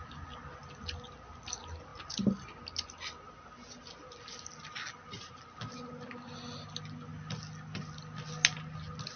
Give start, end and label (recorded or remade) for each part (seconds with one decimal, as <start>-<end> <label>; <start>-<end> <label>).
0.0-9.2 recorded